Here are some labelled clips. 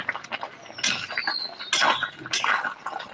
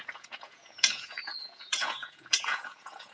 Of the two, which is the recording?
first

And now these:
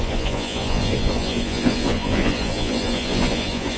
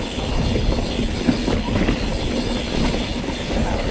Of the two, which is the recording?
second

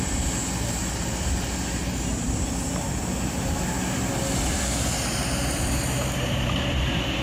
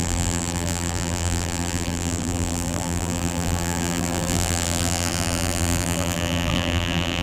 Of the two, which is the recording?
first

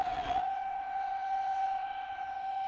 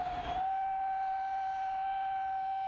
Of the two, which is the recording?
second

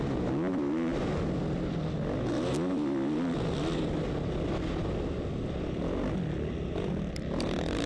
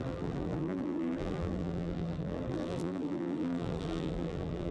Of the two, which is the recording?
first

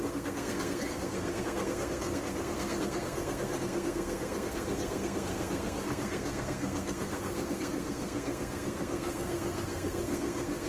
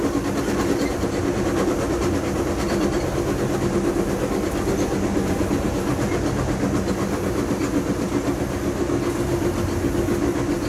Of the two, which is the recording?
second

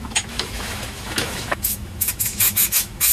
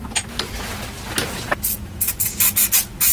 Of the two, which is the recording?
second